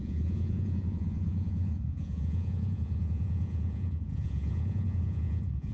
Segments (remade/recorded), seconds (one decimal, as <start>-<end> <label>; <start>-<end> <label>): 0.0-5.7 remade